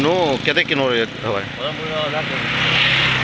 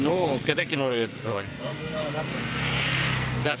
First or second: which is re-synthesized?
second